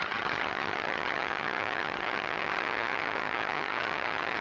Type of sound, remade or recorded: remade